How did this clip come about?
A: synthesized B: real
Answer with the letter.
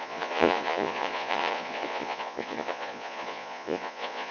A